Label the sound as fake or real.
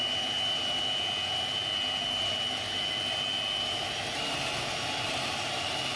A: real